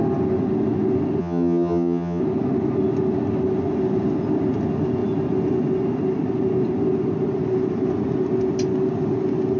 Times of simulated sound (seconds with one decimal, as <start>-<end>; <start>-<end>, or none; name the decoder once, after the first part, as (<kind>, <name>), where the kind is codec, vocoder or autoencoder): 1.2-2.2 (vocoder, HiFi-GAN)